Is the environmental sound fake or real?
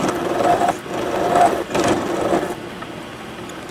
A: real